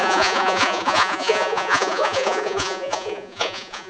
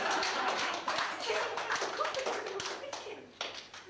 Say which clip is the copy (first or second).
first